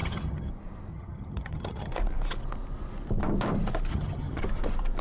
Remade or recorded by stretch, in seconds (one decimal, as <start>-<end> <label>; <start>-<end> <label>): 0.0-0.5 remade; 0.5-0.9 recorded; 0.9-1.9 remade; 1.9-3.9 recorded; 3.9-4.4 remade; 4.4-5.0 recorded